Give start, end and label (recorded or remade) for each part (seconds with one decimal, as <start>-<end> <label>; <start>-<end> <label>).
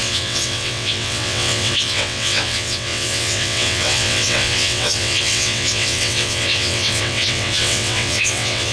0.0-8.7 remade